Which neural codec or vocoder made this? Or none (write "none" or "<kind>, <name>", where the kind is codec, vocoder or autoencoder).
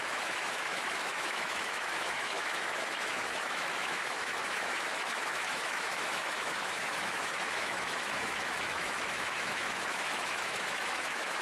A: autoencoder, DAC-VAE